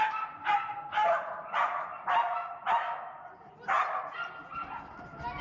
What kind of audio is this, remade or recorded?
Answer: recorded